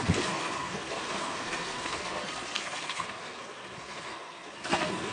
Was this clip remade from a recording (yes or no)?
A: yes